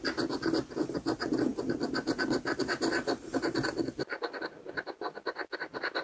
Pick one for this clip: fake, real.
real